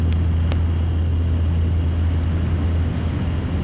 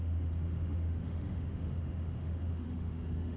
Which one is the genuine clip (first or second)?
first